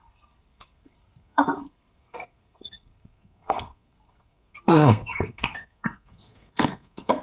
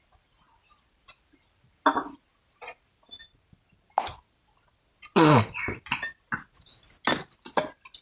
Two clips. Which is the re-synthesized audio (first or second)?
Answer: first